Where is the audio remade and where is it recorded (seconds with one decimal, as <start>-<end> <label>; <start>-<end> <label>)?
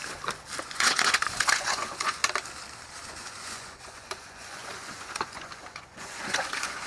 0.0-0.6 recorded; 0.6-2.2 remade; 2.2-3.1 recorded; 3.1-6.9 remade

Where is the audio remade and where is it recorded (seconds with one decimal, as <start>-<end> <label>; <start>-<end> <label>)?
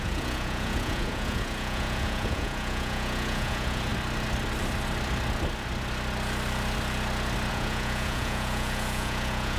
0.0-3.9 remade; 3.9-7.5 recorded; 7.5-9.6 remade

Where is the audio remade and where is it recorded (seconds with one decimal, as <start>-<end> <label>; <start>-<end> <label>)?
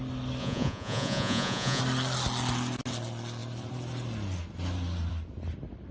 0.0-0.4 recorded; 0.4-1.8 remade; 1.8-5.9 recorded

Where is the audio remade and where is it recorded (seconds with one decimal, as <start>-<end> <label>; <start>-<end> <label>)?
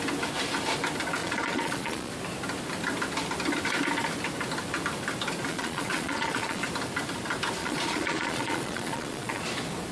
0.0-1.2 recorded; 1.2-2.1 remade; 2.1-5.5 recorded; 5.5-6.6 remade; 6.6-7.6 recorded; 7.6-9.4 remade; 9.4-9.9 recorded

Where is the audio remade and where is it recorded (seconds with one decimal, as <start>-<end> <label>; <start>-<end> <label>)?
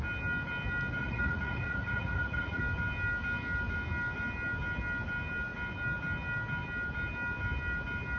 0.0-1.0 recorded; 1.0-2.6 remade; 2.6-8.2 recorded